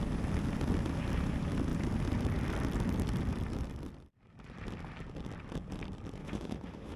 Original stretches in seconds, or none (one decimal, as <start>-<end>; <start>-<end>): 0.0-6.2